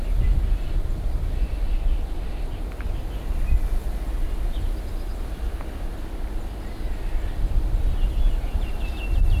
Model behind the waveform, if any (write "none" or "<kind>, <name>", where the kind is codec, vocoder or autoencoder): none